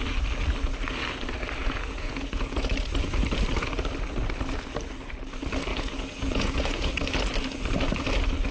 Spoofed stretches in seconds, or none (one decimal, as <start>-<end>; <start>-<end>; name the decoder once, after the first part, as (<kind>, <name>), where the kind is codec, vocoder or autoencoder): 1.6-2.7 (vocoder, Vocos); 5.7-6.9